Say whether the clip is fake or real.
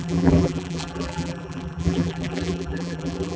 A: fake